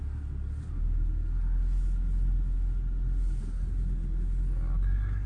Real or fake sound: real